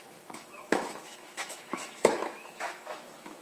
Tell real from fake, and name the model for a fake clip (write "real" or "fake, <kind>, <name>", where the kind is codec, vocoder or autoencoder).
fake, autoencoder, DAC-VAE